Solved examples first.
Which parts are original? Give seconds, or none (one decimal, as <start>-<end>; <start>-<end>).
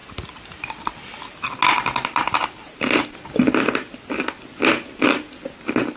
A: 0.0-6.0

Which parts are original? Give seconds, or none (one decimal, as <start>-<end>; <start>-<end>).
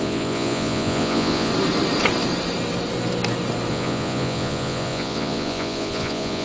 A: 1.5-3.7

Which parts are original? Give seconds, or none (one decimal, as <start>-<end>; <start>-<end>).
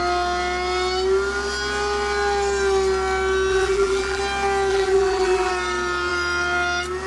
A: 0.0-3.5; 4.2-4.7; 5.5-7.1